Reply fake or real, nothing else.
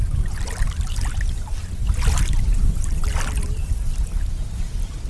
real